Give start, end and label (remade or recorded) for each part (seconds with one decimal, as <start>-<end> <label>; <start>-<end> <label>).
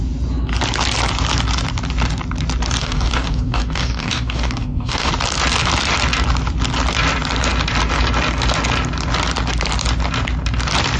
0.0-2.8 recorded; 2.8-5.1 remade; 5.1-11.0 recorded